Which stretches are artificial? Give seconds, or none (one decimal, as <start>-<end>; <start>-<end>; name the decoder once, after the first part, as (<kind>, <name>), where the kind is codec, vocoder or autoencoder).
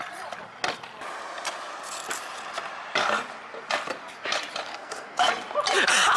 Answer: 4.7-5.3 (codec, SNAC)